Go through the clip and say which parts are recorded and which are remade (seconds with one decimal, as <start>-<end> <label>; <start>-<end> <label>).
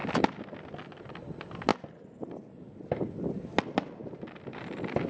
0.0-5.1 recorded